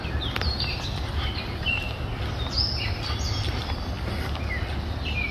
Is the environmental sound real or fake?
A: real